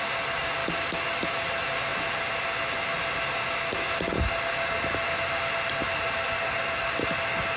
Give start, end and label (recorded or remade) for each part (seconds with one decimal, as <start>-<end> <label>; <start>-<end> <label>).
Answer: 0.0-7.6 recorded